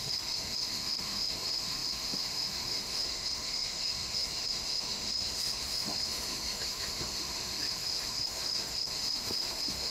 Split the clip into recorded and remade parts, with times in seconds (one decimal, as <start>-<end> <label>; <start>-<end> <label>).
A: 0.0-9.9 remade